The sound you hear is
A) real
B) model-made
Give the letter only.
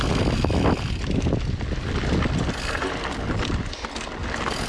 A